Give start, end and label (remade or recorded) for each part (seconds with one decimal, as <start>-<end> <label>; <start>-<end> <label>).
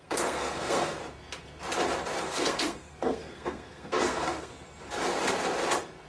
0.0-1.0 remade; 1.0-2.2 recorded; 2.2-4.5 remade; 4.5-6.1 recorded